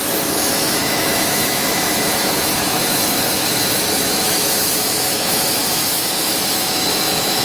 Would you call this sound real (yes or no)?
no